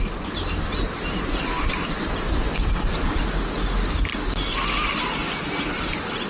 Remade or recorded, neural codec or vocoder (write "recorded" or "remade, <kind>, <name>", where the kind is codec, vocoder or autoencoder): recorded